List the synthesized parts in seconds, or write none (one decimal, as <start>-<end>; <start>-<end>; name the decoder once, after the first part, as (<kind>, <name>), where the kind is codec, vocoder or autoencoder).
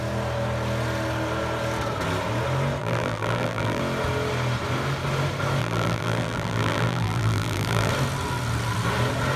2.8-3.8 (vocoder, BigVGAN v2); 5.6-7.9